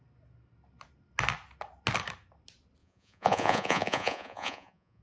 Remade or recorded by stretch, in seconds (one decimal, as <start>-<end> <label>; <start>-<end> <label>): 0.0-2.8 recorded; 2.8-5.0 remade